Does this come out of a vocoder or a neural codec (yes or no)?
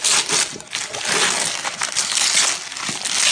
no